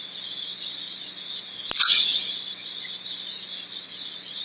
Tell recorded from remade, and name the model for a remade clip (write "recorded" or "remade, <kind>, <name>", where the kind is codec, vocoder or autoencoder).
recorded